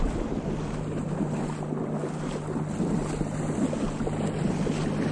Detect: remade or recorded recorded